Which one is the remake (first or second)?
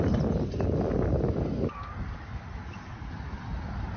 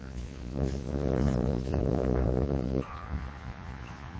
second